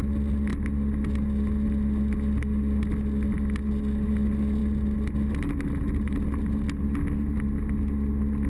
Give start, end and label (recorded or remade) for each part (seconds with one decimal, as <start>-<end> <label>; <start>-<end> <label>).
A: 0.0-8.5 recorded